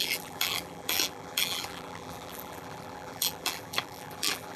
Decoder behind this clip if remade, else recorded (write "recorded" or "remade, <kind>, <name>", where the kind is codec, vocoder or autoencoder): remade, vocoder, BigVGAN v2